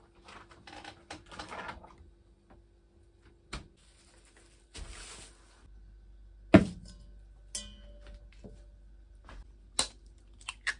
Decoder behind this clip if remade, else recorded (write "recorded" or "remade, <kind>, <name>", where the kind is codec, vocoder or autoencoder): recorded